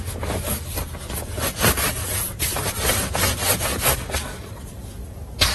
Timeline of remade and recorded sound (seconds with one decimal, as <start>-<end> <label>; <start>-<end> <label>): 0.0-5.5 recorded